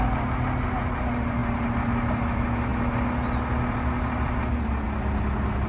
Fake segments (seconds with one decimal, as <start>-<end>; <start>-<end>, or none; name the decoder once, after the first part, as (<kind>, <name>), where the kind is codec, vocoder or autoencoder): none